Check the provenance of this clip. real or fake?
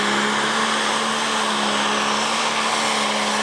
real